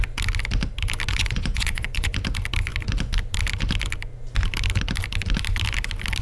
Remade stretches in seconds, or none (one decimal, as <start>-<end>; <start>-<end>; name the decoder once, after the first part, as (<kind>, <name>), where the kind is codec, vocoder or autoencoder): 1.1-2.1 (vocoder, Vocos)